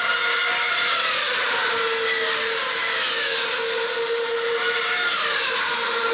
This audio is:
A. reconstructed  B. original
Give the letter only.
B